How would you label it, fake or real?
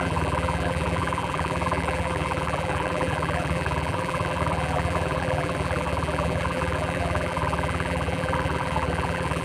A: fake